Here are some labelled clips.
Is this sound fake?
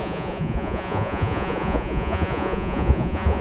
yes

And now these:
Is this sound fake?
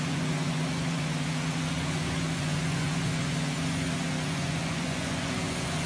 yes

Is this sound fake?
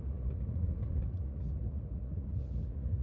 yes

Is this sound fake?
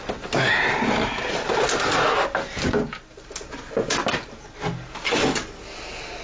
no